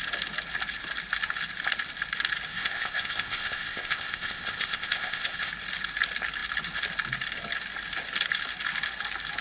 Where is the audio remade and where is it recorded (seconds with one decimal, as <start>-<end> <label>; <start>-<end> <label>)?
0.0-2.5 recorded; 2.5-5.5 remade; 5.5-9.4 recorded